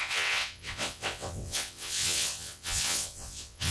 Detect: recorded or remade remade